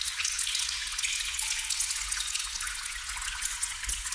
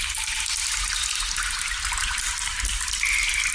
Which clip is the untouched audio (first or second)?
second